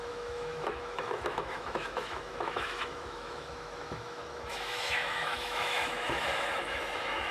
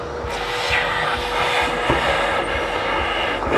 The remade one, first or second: first